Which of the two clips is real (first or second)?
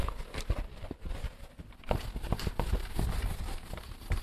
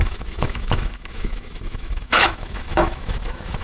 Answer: first